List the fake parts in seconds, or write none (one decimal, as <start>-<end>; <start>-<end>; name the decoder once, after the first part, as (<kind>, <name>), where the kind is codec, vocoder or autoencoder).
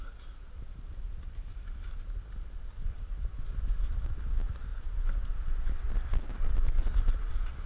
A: none